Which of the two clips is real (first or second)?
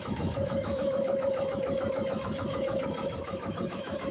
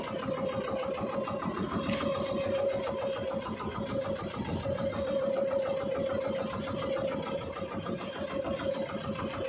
second